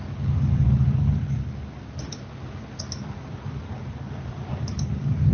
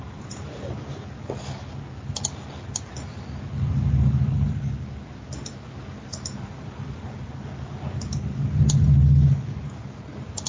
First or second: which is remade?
first